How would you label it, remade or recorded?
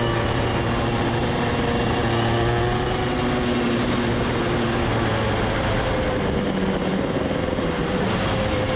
recorded